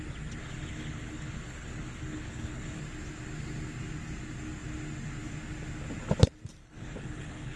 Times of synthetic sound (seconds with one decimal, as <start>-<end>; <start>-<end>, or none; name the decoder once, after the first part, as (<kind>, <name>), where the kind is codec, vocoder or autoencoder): 0.4-2.8 (codec, HILCodec); 6.6-7.6